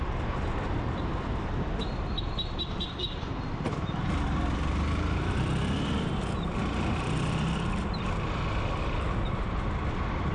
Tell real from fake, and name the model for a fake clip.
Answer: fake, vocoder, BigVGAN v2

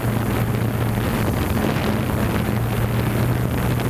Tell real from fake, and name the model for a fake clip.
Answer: real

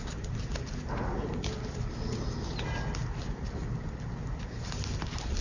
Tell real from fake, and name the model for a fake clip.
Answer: real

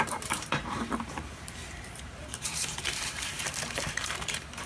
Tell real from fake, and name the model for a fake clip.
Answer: fake, vocoder, BigVGAN v2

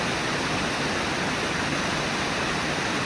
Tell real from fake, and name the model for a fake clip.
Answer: real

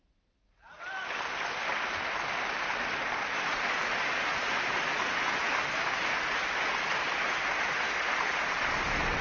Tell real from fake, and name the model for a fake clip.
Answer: fake, vocoder, BigVGAN v2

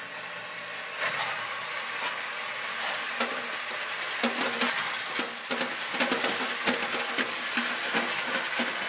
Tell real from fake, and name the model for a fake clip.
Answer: real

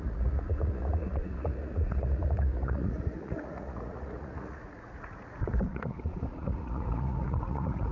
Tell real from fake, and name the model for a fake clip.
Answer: fake, vocoder, Vocos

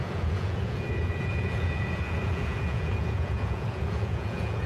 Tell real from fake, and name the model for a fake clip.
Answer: fake, vocoder, Vocos